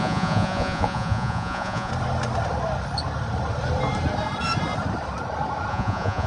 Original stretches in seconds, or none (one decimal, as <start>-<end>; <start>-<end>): 1.9-5.7